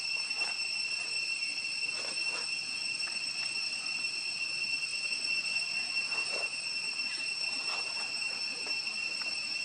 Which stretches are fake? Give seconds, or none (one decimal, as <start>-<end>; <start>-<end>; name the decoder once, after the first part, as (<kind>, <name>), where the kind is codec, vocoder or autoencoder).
2.6-4.0 (vocoder, Vocos); 4.9-5.6